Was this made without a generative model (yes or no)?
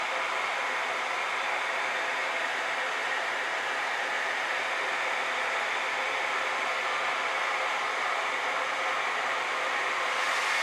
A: yes